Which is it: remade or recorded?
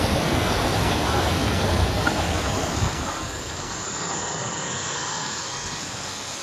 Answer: remade